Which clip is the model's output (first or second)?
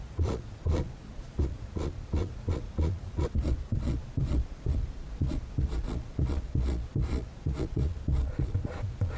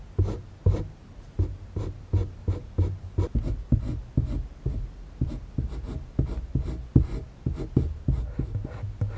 first